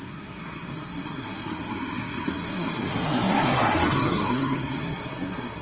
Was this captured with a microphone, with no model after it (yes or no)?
no